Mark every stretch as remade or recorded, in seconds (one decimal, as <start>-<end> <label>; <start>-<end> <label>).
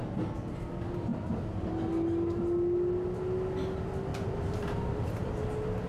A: 0.0-4.1 recorded; 4.1-5.3 remade; 5.3-5.9 recorded